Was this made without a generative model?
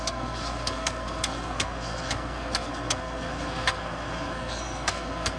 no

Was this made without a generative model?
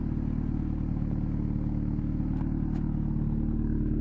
yes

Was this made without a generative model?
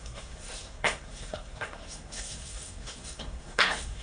no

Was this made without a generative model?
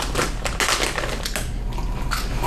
yes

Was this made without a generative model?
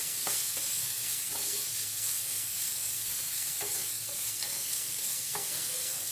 no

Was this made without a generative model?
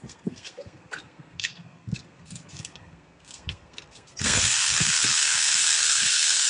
no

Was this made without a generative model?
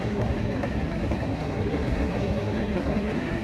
no